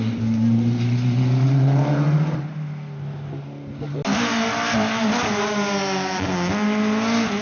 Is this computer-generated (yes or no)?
no